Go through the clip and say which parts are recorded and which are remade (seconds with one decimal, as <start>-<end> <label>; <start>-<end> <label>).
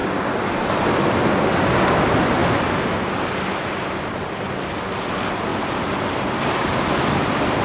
0.0-0.6 remade; 0.6-7.6 recorded